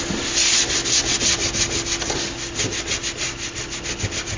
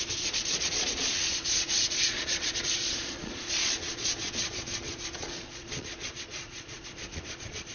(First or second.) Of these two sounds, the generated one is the second